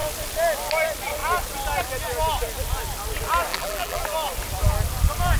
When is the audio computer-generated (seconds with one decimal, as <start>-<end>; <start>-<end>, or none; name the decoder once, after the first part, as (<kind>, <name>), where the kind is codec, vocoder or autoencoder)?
3.5-4.0 (vocoder, BigVGAN v2)